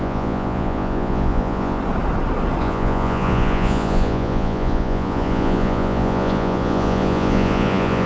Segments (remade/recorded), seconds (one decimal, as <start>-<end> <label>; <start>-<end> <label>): 0.0-1.8 remade; 1.8-2.6 recorded; 2.6-8.1 remade